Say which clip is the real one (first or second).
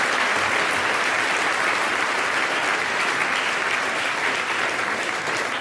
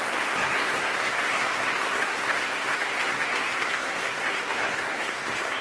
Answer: first